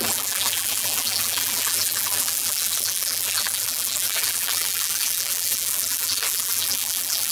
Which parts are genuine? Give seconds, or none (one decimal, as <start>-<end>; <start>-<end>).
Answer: none